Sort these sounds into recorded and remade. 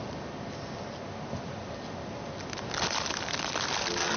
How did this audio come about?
recorded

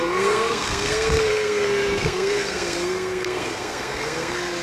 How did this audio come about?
remade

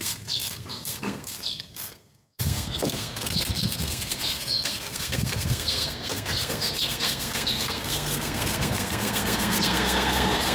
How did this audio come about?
remade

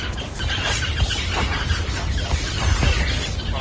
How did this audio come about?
recorded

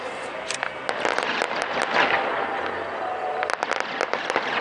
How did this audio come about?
recorded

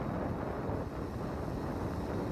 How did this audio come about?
recorded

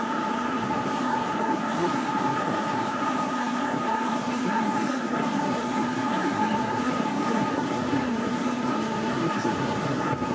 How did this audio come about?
remade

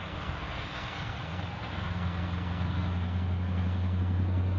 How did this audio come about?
remade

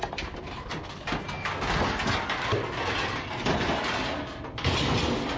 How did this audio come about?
recorded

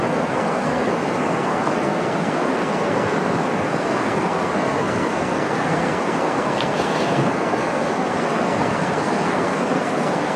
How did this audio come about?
remade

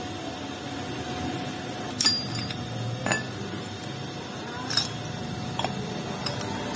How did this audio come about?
recorded